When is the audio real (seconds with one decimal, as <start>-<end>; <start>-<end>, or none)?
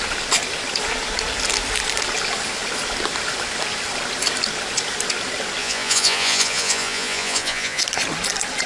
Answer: 0.0-5.6; 7.8-8.7